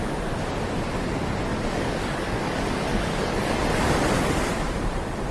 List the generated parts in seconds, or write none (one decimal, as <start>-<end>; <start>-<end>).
1.5-3.6